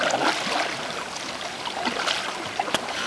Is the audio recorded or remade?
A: recorded